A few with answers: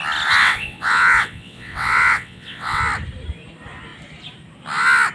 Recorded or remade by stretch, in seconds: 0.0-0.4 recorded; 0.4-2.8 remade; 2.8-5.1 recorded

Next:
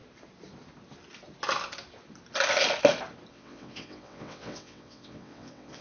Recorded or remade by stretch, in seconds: 0.0-3.3 recorded; 3.3-5.8 remade